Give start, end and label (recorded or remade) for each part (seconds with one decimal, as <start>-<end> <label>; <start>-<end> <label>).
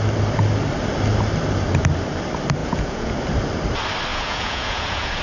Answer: 0.0-2.6 recorded; 2.6-3.1 remade; 3.1-4.1 recorded; 4.1-5.2 remade